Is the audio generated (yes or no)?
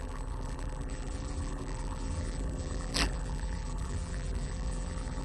yes